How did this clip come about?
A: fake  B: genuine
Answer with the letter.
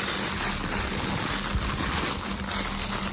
B